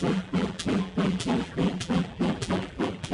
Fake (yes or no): yes